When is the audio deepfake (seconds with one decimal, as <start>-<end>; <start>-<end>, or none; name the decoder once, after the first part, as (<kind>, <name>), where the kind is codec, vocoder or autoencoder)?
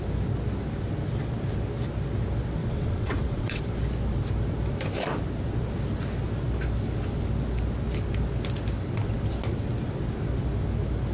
2.6-3.6 (vocoder, WaveNeXt)